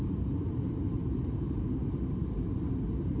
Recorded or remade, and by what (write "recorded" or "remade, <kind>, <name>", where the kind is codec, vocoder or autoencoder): remade, vocoder, BigVGAN v2